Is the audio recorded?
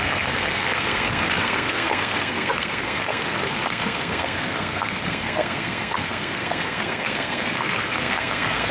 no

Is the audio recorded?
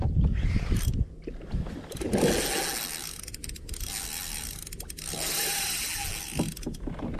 yes